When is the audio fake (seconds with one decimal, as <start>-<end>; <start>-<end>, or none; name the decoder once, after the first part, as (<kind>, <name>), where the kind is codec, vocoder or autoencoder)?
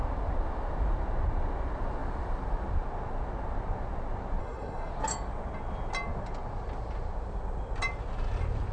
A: 4.4-4.9 (codec, SNAC)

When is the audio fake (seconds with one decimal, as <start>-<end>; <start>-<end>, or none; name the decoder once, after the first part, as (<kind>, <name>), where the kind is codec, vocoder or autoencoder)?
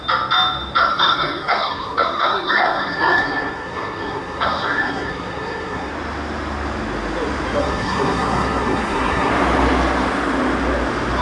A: 0.8-5.9 (codec, SNAC); 7.6-9.3